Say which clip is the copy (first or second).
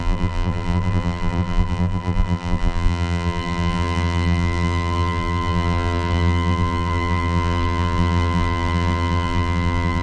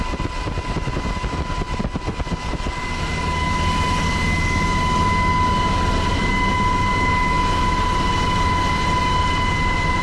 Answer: first